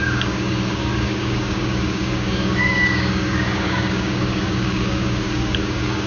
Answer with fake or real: fake